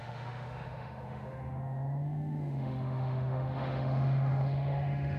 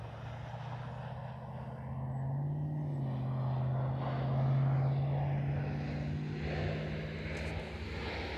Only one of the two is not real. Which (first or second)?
first